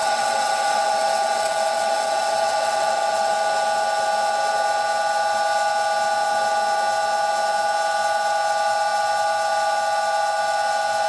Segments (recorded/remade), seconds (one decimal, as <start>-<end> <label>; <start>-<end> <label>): 0.0-3.3 remade; 3.3-11.1 recorded

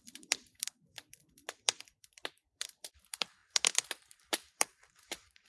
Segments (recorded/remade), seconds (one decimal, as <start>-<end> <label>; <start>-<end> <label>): 0.0-3.4 remade; 3.4-3.9 recorded; 3.9-5.5 remade

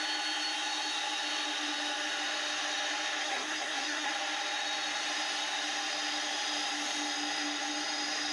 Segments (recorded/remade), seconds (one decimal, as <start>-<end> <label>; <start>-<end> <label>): 0.0-3.2 recorded; 3.2-4.1 remade; 4.1-8.3 recorded

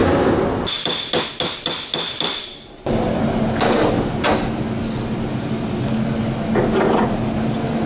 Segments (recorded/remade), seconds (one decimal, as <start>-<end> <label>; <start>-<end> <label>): 0.0-7.9 recorded

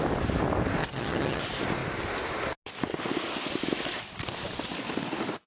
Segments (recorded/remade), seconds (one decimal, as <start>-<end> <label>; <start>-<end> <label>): 0.0-0.8 recorded; 0.8-1.4 remade; 1.4-5.5 recorded

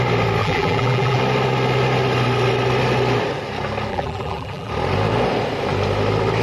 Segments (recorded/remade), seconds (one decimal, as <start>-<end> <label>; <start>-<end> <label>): 0.0-0.4 recorded; 0.4-1.2 remade; 1.2-3.9 recorded; 3.9-4.7 remade; 4.7-6.4 recorded

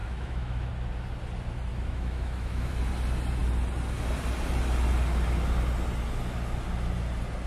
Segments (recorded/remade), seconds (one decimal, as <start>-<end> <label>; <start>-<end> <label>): 0.0-0.7 remade; 0.7-1.7 recorded; 1.7-2.7 remade; 2.7-7.5 recorded